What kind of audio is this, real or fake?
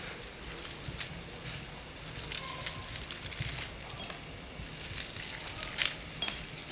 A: real